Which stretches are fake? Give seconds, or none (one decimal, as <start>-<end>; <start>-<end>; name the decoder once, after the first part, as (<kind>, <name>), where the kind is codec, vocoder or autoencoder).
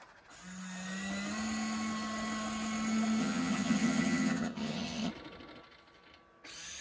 3.2-5.1 (vocoder, HiFi-GAN)